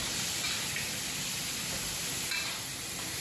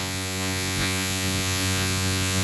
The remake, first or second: second